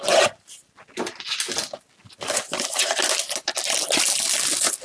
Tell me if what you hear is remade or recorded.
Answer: recorded